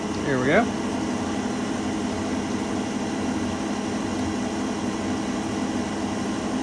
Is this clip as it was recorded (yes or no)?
yes